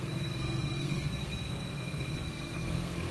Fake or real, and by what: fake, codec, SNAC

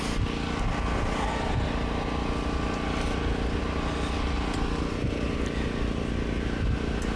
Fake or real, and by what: real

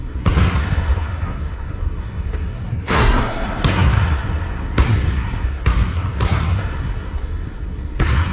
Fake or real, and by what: fake, codec, SNAC